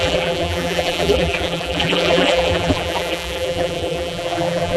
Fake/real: fake